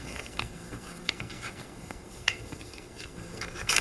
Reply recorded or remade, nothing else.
remade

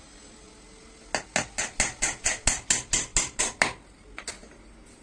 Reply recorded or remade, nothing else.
recorded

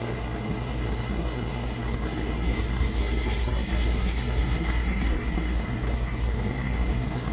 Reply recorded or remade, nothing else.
remade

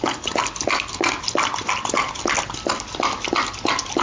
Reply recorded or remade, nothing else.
recorded